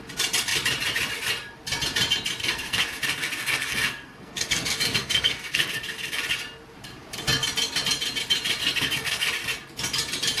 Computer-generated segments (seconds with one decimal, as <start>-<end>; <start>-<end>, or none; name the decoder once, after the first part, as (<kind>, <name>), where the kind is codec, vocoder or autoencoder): 2.4-6.2 (codec, SNAC); 8.6-9.3